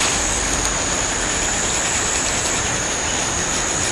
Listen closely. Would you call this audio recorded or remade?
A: recorded